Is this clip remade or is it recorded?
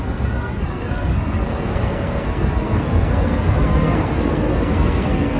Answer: remade